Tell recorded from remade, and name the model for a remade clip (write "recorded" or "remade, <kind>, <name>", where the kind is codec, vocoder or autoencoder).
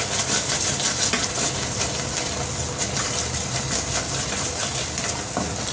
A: recorded